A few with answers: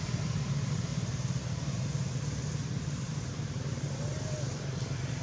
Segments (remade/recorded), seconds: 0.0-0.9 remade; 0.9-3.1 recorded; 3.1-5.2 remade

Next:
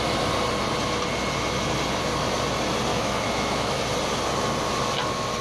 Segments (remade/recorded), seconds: 0.0-2.9 recorded; 2.9-3.8 remade; 3.8-5.4 recorded

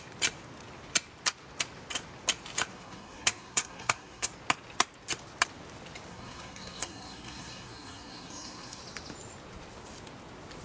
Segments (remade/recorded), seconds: 0.0-2.7 recorded; 2.7-4.3 remade; 4.3-6.1 recorded; 6.1-8.8 remade; 8.8-10.6 recorded

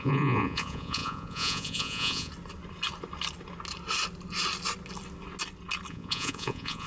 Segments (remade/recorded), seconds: 0.0-2.3 remade; 2.3-5.9 recorded; 5.9-6.9 remade

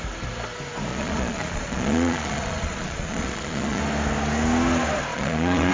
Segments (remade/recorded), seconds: 0.0-0.9 recorded; 0.9-3.8 remade; 3.8-5.1 recorded; 5.1-5.7 remade

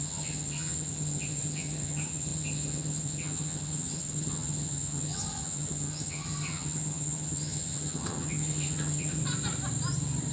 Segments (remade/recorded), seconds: 0.0-9.2 remade; 9.2-10.3 recorded